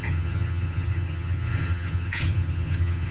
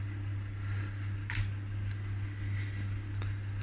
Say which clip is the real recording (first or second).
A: second